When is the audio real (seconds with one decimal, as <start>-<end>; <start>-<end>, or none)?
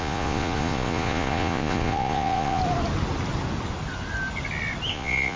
2.6-4.9